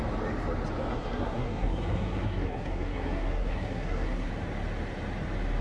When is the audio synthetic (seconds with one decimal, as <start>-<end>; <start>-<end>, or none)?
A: 0.9-4.3